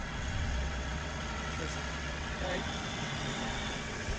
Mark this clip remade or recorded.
remade